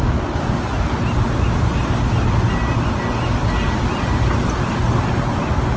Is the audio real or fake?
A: real